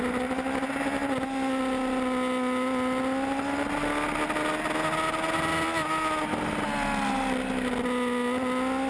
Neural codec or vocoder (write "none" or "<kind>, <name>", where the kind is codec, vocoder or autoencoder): none